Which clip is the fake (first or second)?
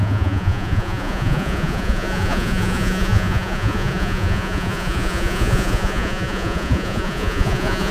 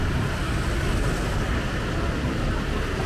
first